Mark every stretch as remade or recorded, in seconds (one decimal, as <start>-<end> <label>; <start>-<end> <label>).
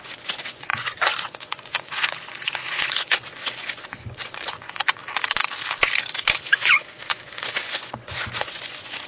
0.0-5.0 remade; 5.0-6.5 recorded; 6.5-9.1 remade